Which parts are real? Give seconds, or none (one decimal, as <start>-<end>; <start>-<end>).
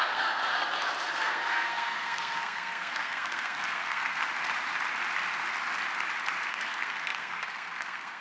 0.4-1.1; 4.2-6.5